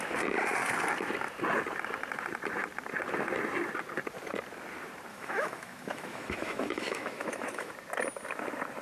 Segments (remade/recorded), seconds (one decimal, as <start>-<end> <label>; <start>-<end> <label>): 0.0-5.1 recorded; 5.1-7.7 remade; 7.7-8.8 recorded